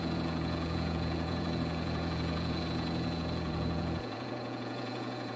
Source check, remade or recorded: remade